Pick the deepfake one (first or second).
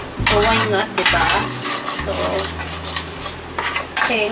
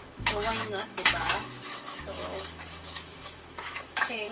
second